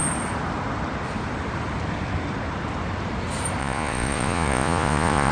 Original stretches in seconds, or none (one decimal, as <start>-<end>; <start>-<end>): 0.0-3.6